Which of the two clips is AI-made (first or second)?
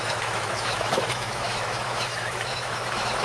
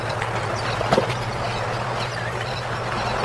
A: first